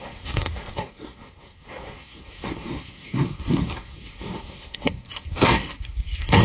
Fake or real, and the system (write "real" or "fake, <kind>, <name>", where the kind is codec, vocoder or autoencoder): fake, codec, SNAC